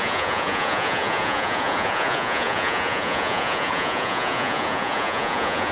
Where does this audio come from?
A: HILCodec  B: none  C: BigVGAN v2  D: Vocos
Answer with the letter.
D